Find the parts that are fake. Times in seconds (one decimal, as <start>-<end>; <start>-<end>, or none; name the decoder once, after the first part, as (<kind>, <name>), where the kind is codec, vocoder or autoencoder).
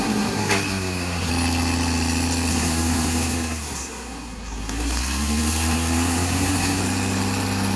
0.0-1.3 (codec, SNAC); 2.5-6.8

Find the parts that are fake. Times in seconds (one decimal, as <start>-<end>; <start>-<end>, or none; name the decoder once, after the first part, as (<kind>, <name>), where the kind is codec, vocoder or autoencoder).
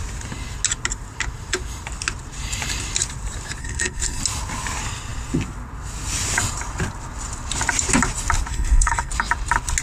3.6-4.2 (codec, SNAC); 8.5-9.1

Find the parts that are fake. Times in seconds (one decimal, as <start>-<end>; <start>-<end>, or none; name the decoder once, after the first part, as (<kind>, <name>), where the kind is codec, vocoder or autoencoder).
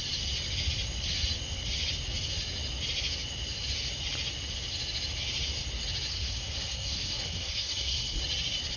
6.1-8.2 (codec, SNAC)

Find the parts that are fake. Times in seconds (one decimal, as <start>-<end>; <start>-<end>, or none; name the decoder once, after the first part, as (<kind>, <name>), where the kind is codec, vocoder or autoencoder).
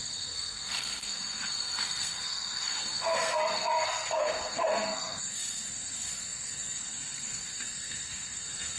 0.0-8.8 (codec, SNAC)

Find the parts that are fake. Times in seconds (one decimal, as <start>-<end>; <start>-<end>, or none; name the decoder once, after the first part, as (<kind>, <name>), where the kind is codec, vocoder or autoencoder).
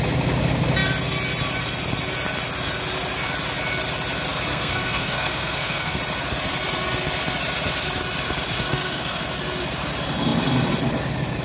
4.5-6.0 (codec, SNAC); 8.7-9.2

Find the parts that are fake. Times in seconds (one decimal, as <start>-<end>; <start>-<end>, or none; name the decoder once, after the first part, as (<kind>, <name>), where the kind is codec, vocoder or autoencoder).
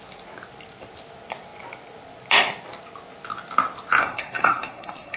4.0-5.2 (codec, SNAC)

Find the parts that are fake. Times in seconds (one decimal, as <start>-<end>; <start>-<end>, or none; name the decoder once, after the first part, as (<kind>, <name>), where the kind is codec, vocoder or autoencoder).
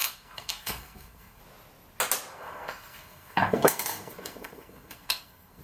0.0-1.4 (codec, SNAC); 2.3-5.6